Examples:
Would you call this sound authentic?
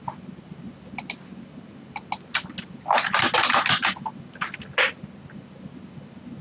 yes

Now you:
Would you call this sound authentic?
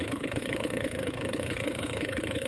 no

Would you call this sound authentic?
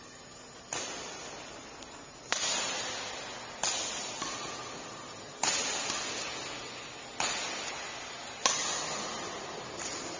yes